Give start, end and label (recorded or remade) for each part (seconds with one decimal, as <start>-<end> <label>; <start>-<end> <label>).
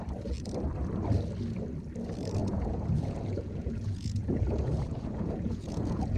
0.0-2.4 recorded; 2.4-6.2 remade